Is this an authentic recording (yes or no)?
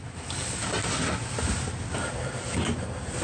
yes